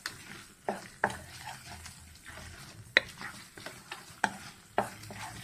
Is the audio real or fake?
real